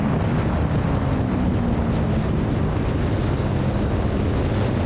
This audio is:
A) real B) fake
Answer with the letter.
A